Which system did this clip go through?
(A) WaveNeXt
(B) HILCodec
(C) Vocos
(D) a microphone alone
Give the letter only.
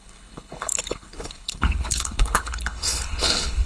B